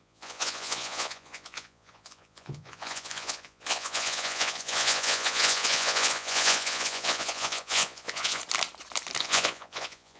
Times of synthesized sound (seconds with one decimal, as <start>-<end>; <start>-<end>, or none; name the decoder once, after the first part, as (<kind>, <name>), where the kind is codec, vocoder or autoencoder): 0.0-8.4 (vocoder, Vocos); 9.2-10.2